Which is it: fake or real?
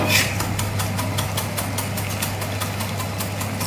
real